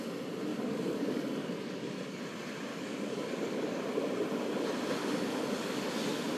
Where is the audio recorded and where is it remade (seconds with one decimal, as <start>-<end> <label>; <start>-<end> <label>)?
0.0-0.5 recorded; 0.5-2.2 remade; 2.2-2.7 recorded; 2.7-3.8 remade; 3.8-5.0 recorded; 5.0-5.9 remade; 5.9-6.4 recorded